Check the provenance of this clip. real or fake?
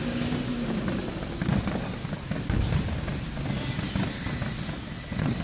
real